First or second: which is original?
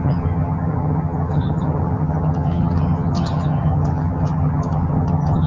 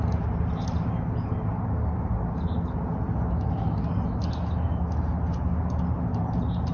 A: second